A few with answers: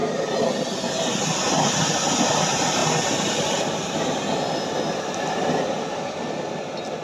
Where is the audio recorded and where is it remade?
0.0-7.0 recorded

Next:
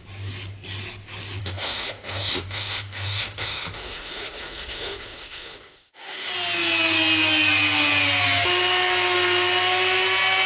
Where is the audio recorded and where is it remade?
0.0-1.4 recorded; 1.4-6.3 remade; 6.3-10.5 recorded